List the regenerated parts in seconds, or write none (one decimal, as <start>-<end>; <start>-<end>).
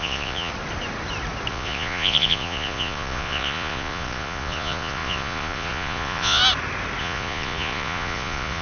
0.0-0.5; 1.5-6.4; 7.0-8.6